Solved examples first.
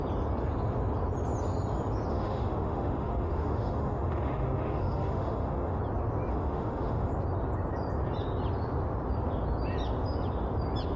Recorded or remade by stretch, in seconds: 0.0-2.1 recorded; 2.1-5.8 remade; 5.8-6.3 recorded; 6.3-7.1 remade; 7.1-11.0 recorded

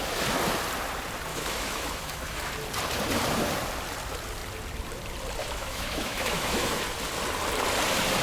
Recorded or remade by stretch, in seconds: 0.0-1.3 recorded; 1.3-2.5 remade; 2.5-5.4 recorded; 5.4-6.8 remade; 6.8-8.2 recorded

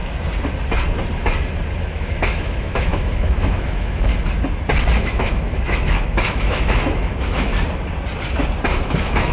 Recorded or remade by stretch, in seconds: 0.0-1.8 recorded; 1.8-4.1 remade; 4.1-5.0 recorded; 5.0-7.5 remade; 7.5-8.7 recorded; 8.7-9.3 remade